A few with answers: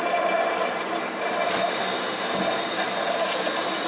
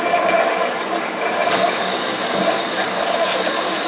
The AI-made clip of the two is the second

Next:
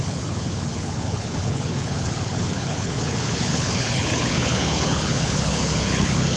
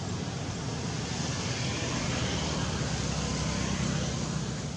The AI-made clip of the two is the first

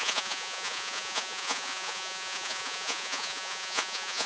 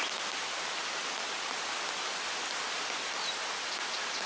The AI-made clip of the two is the first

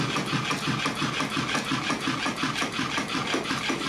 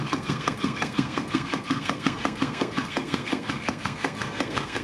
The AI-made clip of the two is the second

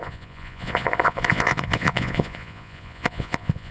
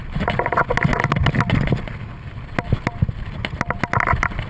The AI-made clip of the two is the first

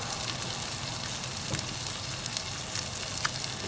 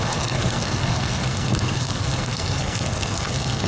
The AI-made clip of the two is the second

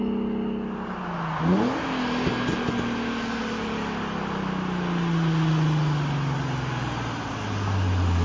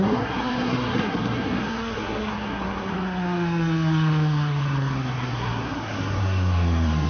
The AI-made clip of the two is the second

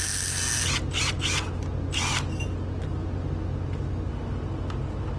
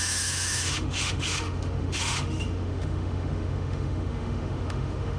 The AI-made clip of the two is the second